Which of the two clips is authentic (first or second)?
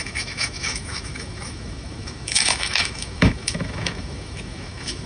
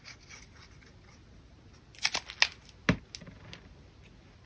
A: second